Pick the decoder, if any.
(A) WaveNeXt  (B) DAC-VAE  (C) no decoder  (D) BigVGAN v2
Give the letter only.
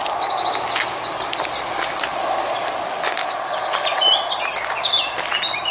C